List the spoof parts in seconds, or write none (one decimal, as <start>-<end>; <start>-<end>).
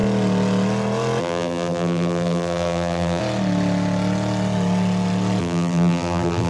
1.2-3.2; 5.4-6.5